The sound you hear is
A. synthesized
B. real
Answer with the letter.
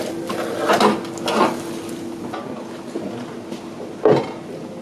B